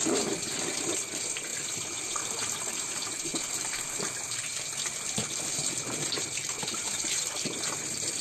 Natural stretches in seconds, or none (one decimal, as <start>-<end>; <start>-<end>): 4.5-6.3